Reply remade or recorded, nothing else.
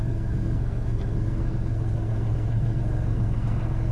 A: remade